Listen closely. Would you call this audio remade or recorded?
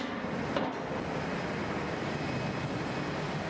recorded